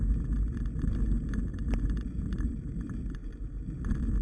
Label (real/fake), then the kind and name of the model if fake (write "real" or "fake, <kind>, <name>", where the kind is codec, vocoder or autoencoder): real